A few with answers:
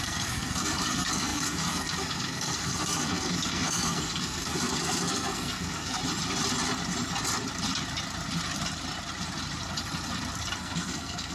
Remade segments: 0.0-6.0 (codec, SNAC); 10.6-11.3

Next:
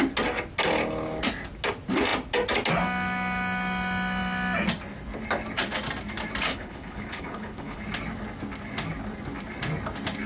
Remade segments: 6.5-7.8 (codec, HILCodec)

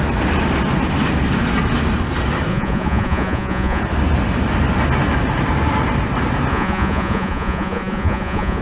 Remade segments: 2.5-3.8 (vocoder, Vocos); 6.5-8.6

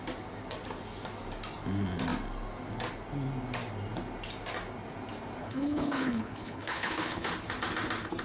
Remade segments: 5.4-7.3 (codec, HILCodec)

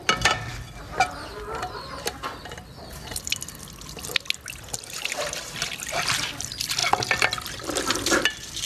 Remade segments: 0.0-0.5 (vocoder, BigVGAN v2); 5.6-6.8; 8.2-8.6

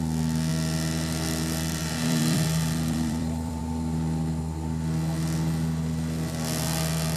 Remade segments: 0.5-3.6 (vocoder, BigVGAN v2)